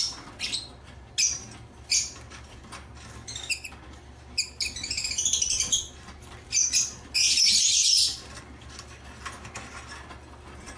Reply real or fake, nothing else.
real